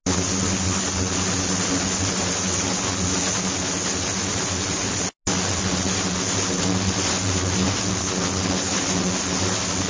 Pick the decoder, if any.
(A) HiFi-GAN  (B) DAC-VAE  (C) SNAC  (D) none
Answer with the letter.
D